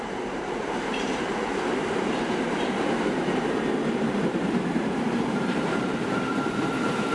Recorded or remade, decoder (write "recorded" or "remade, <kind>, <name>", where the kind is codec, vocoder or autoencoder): remade, vocoder, BigVGAN v2